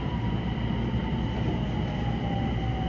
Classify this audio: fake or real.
real